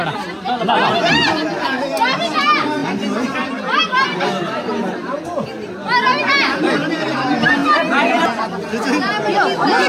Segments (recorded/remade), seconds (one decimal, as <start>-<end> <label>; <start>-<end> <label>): 0.0-9.9 recorded